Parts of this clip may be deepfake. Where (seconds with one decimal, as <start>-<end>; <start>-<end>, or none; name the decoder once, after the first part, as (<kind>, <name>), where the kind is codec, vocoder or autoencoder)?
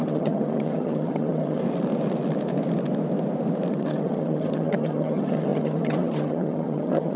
0.0-1.6 (vocoder, HiFi-GAN); 3.7-7.2